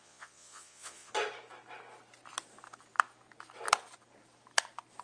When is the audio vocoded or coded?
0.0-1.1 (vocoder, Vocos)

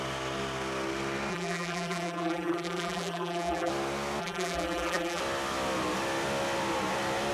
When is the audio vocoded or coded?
1.3-3.7 (vocoder, BigVGAN v2); 4.2-5.2

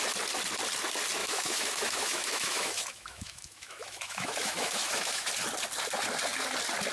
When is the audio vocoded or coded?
1.2-5.3 (autoencoder, DAC-VAE)

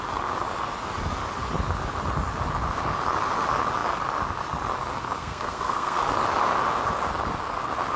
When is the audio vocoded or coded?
5.2-6.0 (codec, SNAC)

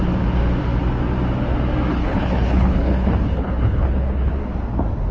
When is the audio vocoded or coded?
1.9-4.3 (codec, HILCodec)

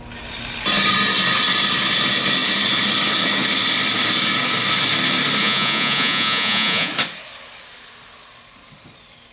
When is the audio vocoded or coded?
5.4-6.9 (vocoder, Vocos)

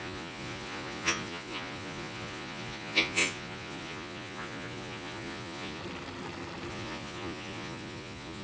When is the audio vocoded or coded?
0.0-5.8 (vocoder, Vocos); 6.7-8.4

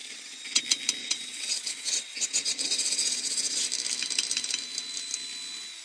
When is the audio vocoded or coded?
0.0-0.6 (vocoder, WaveNeXt); 1.0-3.7